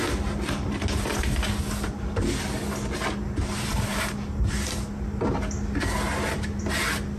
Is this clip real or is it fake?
real